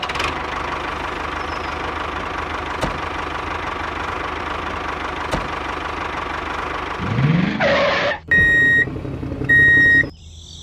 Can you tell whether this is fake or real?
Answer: real